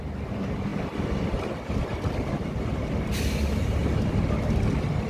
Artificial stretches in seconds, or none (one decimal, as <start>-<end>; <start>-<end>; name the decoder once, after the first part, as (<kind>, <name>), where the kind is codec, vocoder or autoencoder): none